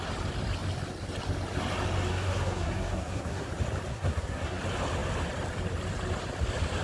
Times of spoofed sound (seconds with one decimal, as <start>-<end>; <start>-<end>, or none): 2.1-3.5; 3.9-4.6